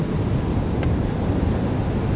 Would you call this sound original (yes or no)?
yes